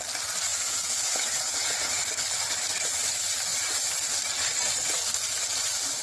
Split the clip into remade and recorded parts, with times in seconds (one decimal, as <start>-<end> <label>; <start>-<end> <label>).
0.0-0.5 recorded; 0.5-2.0 remade; 2.0-6.0 recorded